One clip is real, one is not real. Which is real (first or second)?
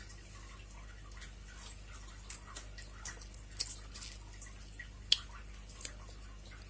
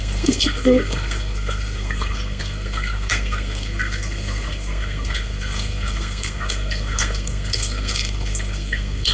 first